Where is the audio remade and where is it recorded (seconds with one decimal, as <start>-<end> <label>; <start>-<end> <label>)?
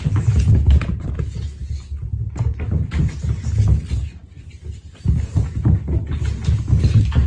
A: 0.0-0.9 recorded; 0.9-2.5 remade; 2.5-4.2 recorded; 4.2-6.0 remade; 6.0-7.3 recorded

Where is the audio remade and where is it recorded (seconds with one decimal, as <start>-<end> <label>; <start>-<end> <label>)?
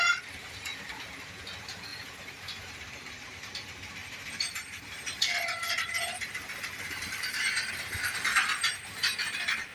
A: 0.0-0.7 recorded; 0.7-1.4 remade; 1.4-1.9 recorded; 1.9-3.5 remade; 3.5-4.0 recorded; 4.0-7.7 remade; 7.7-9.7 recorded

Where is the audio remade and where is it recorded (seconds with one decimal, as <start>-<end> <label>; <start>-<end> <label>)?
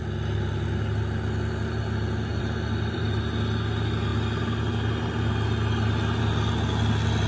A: 0.0-2.3 recorded; 2.3-3.2 remade; 3.2-7.3 recorded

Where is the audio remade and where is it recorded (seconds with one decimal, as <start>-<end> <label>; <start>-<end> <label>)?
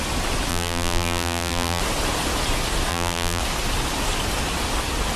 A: 0.0-0.5 recorded; 0.5-1.8 remade; 1.8-2.9 recorded; 2.9-3.4 remade; 3.4-5.2 recorded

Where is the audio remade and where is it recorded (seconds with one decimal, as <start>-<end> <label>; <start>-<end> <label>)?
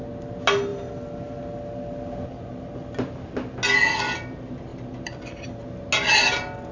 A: 0.0-4.7 recorded; 4.7-5.6 remade; 5.6-6.7 recorded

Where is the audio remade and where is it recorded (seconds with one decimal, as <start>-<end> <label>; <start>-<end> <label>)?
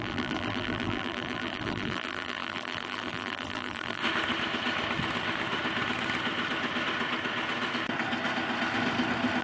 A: 0.0-4.0 remade; 4.0-9.4 recorded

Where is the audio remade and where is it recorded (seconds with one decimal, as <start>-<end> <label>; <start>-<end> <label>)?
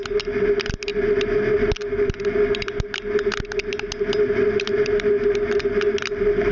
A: 0.0-6.5 recorded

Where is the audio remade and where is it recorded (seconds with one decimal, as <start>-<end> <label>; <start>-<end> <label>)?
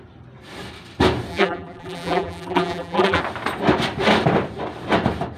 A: 0.0-1.3 recorded; 1.3-3.2 remade; 3.2-5.4 recorded